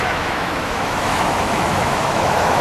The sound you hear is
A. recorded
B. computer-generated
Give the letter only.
B